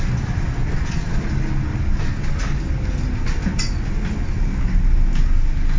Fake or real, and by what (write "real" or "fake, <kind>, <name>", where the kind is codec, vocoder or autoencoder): real